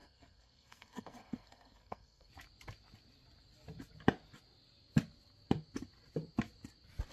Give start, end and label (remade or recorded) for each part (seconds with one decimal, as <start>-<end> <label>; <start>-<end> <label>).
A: 0.0-2.3 remade; 2.3-7.1 recorded